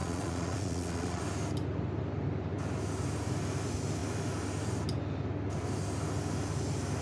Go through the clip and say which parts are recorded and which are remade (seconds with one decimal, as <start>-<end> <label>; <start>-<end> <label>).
0.0-1.2 remade; 1.2-7.0 recorded